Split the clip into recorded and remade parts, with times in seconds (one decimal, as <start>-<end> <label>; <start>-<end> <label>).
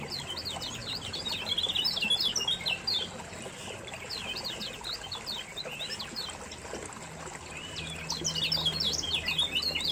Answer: 0.0-0.8 recorded; 0.8-1.3 remade; 1.3-9.9 recorded